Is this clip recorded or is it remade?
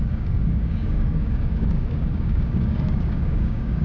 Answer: remade